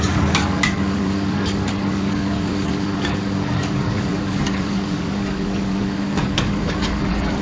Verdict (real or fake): fake